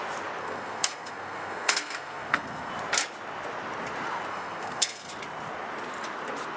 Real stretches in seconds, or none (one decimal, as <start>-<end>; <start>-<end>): 0.0-0.4; 2.7-4.3; 5.1-6.6